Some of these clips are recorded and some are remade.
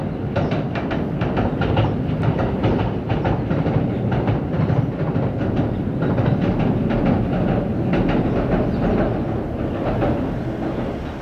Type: recorded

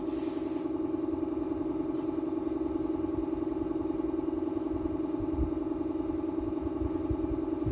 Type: recorded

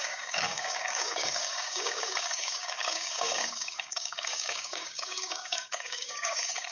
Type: remade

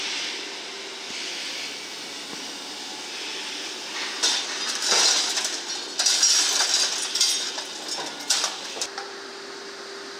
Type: recorded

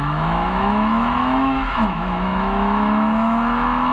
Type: remade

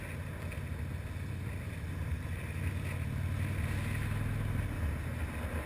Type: recorded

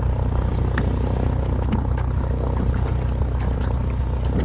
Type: recorded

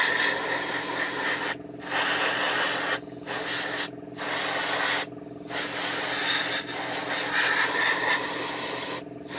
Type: recorded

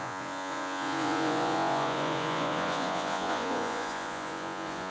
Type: remade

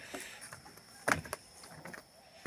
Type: recorded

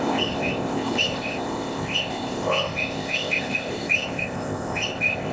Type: remade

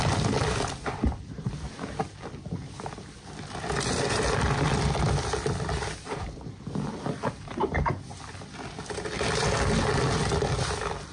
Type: remade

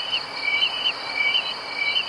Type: recorded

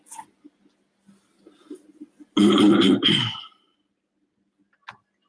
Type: recorded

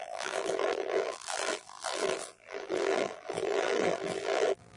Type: remade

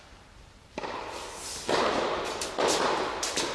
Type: remade